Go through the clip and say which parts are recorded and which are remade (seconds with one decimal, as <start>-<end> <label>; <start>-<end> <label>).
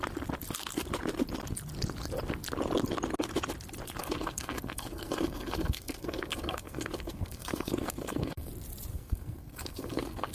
0.0-4.0 recorded; 4.0-8.5 remade; 8.5-8.9 recorded; 8.9-10.3 remade